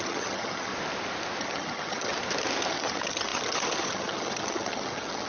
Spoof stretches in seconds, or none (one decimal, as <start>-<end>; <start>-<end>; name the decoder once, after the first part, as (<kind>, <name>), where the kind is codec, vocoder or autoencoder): 0.0-0.7 (vocoder, HiFi-GAN); 1.4-2.1; 2.7-5.3